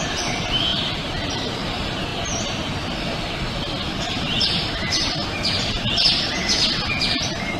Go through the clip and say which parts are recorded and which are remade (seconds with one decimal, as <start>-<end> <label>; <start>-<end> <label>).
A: 0.0-0.7 recorded; 0.7-1.3 remade; 1.3-3.9 recorded; 3.9-5.8 remade; 5.8-7.6 recorded